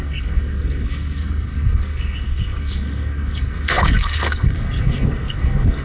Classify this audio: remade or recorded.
remade